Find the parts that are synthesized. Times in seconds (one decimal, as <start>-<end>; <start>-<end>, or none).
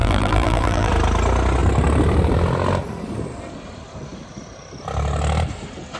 0.0-0.9